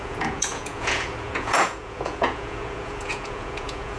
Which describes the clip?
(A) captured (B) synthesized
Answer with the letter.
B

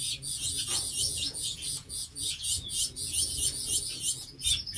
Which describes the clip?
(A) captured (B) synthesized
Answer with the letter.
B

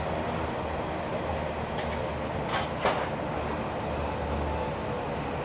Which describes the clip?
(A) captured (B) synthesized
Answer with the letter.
A